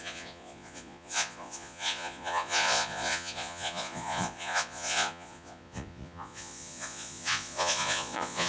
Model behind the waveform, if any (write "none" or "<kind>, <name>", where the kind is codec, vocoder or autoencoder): vocoder, Vocos